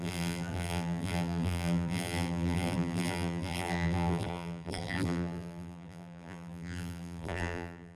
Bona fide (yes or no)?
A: no